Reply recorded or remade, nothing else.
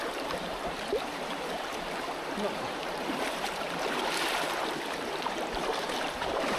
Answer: remade